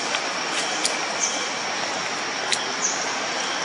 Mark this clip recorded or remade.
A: recorded